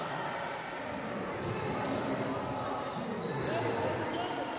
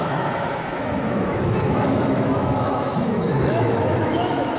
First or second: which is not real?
second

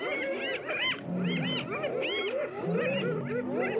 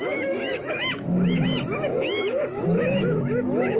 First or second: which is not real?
second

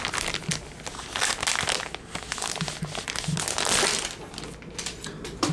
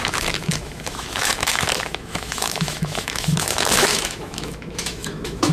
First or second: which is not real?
second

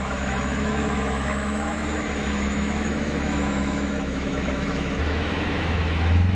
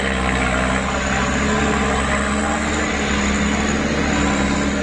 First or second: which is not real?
first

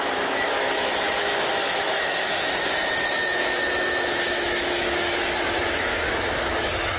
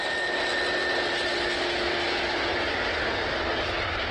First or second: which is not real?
first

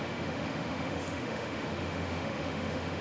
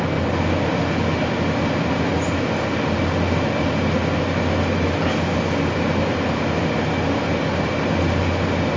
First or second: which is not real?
first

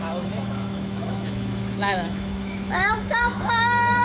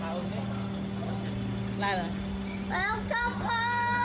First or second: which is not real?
first